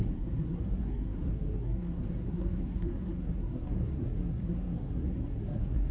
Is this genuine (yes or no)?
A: no